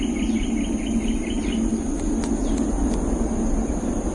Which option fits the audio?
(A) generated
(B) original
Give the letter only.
B